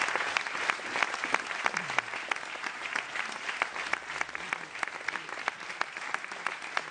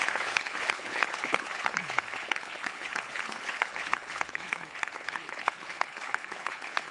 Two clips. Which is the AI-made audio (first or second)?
second